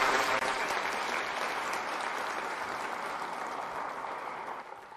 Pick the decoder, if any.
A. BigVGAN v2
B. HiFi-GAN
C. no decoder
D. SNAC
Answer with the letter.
A